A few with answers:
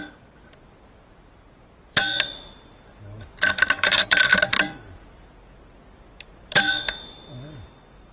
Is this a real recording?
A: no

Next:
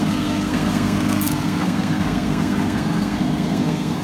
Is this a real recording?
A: no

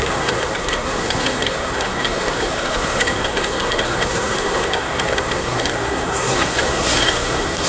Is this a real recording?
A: no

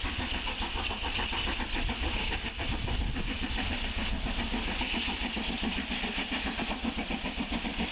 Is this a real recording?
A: no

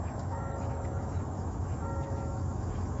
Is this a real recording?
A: no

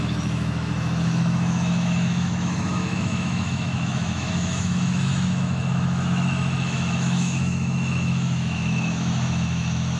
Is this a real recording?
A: no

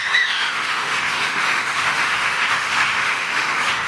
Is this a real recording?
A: no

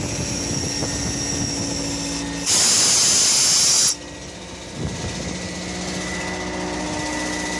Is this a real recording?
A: yes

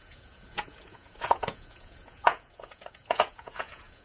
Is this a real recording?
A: no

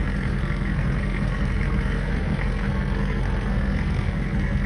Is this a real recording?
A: no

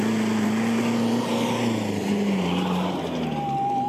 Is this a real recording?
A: yes